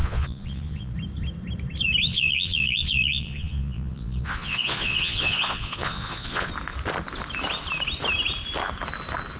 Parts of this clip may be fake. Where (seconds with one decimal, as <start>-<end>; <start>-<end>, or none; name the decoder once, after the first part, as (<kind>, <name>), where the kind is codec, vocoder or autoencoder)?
0.0-0.9 (vocoder, Vocos); 2.1-6.5

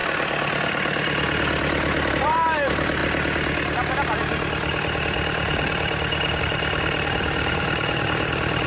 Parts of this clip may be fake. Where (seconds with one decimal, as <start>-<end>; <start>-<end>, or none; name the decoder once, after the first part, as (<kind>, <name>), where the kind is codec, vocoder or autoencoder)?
2.1-3.0 (vocoder, BigVGAN v2); 6.4-8.7